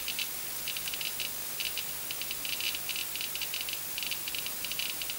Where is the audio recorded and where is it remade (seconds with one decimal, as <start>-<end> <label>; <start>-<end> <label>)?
0.0-5.2 recorded

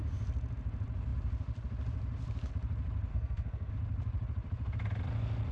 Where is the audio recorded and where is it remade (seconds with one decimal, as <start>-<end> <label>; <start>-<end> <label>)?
0.0-3.1 recorded; 3.1-3.7 remade; 3.7-5.5 recorded